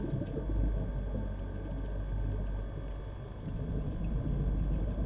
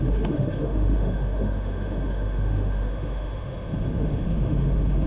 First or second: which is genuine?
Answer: first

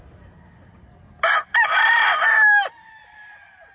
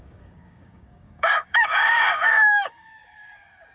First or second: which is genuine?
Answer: first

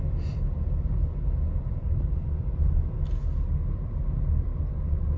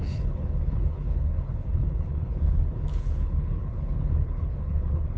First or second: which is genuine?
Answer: first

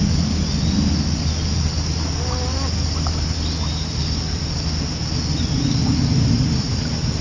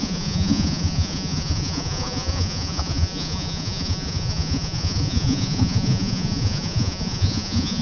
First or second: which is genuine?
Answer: first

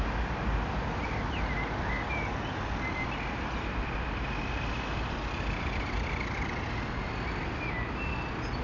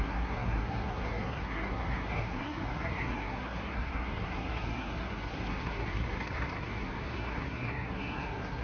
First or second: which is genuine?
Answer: first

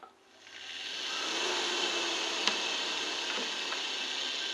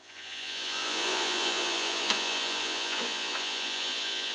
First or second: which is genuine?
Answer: first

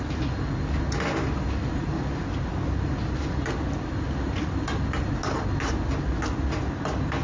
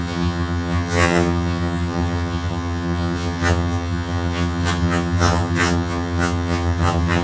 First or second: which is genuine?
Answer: first